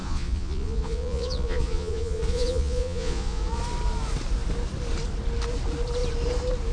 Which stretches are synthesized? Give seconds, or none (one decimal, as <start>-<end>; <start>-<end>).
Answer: 0.0-3.6